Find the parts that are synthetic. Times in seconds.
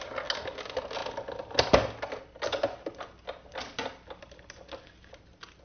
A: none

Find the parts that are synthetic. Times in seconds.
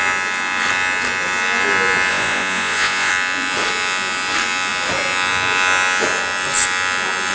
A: 2.1-3.1 (vocoder, Vocos)